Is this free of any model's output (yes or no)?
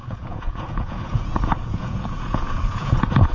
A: no